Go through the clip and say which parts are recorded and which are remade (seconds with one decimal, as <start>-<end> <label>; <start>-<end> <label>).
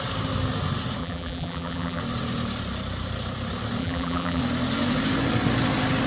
0.0-1.0 recorded; 1.0-2.0 remade; 2.0-3.8 recorded; 3.8-4.4 remade; 4.4-6.1 recorded